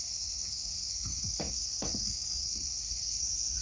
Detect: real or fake fake